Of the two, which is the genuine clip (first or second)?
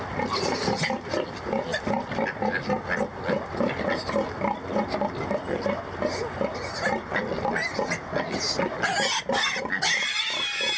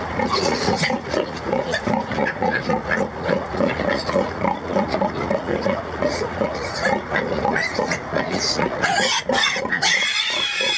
first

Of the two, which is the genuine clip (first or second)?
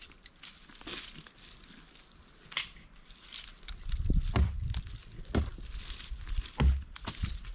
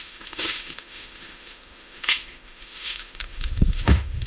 first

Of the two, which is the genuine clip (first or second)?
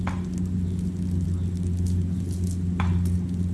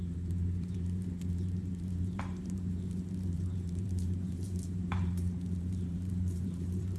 first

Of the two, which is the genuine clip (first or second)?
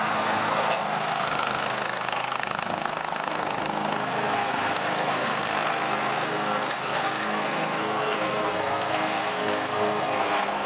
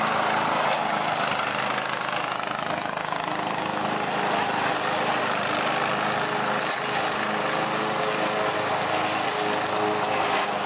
second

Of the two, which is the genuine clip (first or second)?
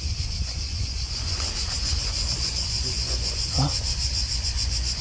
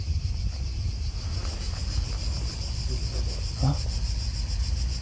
second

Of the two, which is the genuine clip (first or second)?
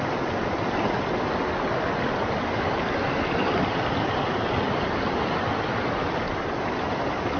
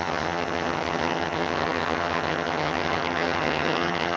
first